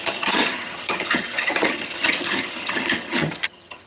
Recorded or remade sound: remade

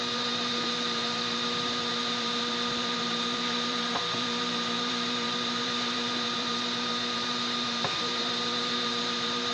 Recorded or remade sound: remade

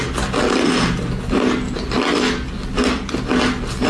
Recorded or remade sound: recorded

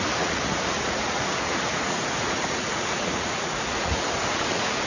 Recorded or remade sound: remade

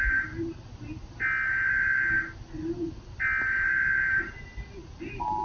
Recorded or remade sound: recorded